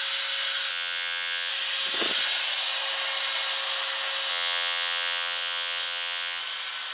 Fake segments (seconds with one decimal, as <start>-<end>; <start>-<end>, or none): 0.7-1.5; 4.3-6.4